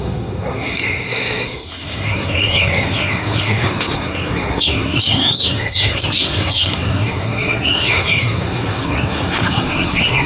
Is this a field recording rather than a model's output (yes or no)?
no